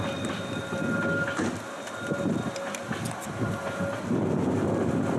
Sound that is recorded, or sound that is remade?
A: recorded